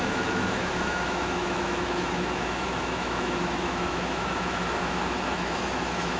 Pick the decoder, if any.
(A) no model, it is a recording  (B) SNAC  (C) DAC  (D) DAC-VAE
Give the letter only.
D